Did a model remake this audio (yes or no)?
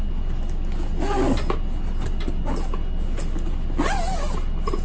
no